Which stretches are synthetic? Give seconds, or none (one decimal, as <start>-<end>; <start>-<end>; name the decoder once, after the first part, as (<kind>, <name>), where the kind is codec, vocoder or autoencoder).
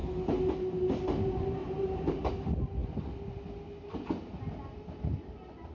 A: 1.6-2.3 (vocoder, BigVGAN v2)